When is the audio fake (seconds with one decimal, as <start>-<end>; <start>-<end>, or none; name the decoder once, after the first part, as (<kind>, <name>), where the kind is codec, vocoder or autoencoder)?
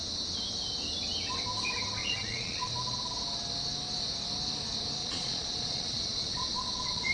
2.0-2.7 (vocoder, Vocos); 5.0-7.1